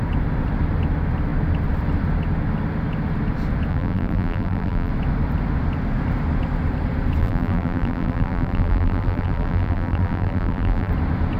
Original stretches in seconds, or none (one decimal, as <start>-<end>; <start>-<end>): 0.0-3.7; 4.9-7.2; 10.9-11.4